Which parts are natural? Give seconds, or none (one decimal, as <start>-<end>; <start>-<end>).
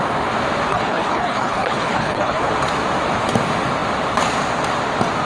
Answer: 0.0-0.7; 2.5-5.3